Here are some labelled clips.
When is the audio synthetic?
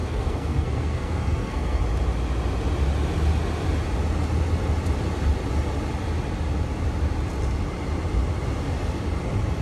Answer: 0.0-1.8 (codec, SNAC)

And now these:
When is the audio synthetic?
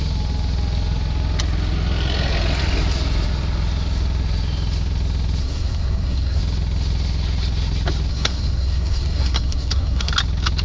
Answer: 5.4-6.4 (codec, SNAC); 8.1-10.1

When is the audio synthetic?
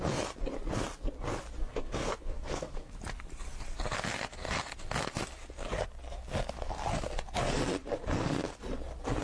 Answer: 1.6-2.9 (codec, SNAC)